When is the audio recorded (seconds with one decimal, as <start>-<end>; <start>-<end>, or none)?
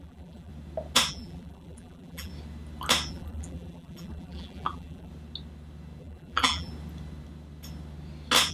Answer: 0.5-1.1; 2.3-3.1; 5.1-6.0; 6.7-8.5